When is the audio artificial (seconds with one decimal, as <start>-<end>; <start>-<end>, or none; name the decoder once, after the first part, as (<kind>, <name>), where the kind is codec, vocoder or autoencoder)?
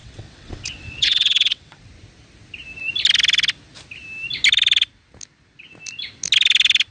0.0-1.8 (vocoder, WaveNeXt)